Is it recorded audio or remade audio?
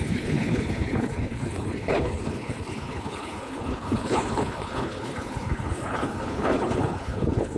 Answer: remade